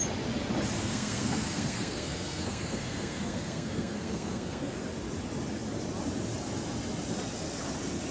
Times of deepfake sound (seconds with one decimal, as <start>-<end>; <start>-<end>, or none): 0.8-4.8